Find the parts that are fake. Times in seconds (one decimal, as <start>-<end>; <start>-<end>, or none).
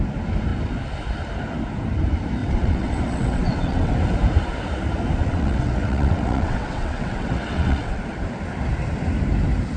2.4-3.9; 5.2-8.0